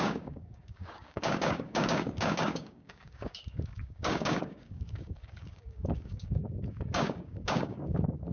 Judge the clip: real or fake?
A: fake